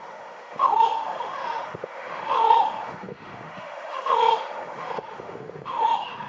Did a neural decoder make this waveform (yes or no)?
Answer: yes